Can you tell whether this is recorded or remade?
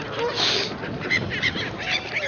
recorded